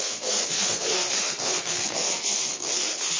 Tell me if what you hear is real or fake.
fake